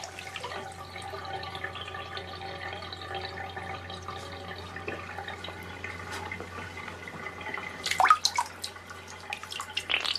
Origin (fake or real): real